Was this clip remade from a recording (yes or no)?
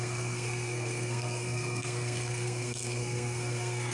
yes